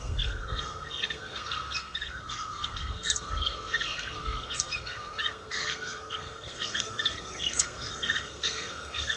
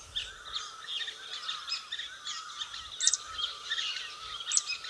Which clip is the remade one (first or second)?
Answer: first